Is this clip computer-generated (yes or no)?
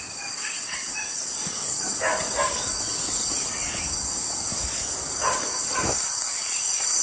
yes